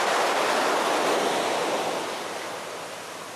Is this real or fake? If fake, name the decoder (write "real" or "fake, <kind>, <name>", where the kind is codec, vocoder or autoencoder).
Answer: real